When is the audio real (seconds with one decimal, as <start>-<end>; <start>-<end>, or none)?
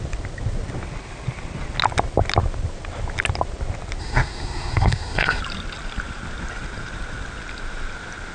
0.0-4.0; 5.4-8.3